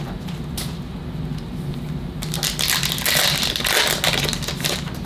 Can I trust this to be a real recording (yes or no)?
yes